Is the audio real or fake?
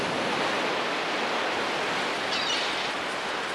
real